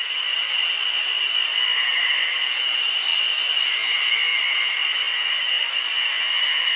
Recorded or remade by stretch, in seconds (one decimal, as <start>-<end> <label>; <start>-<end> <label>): 0.0-6.8 recorded